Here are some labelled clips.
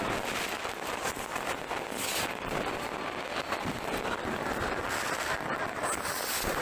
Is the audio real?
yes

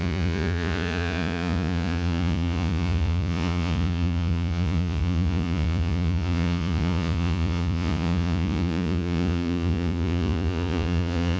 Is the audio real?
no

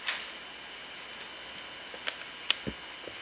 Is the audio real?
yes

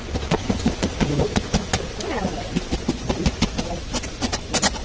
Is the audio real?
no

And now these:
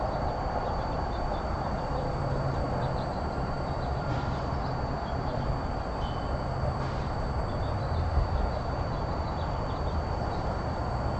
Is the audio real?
no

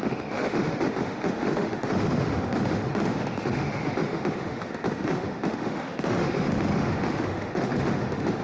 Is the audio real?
no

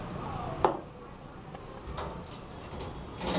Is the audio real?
yes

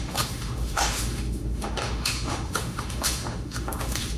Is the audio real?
no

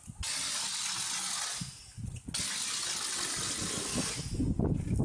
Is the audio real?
yes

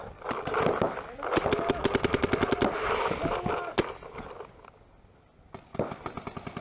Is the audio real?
yes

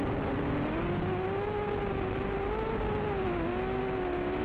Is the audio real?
yes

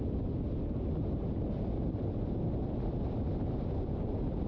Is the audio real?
yes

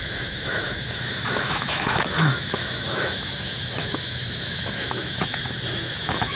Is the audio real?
no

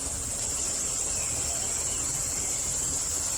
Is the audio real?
yes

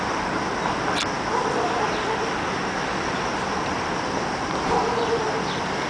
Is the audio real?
yes